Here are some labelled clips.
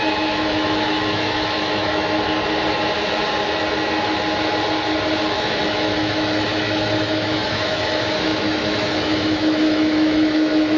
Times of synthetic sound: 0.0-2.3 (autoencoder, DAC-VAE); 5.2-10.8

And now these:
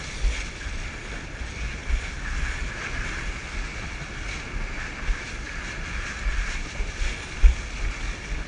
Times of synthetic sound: none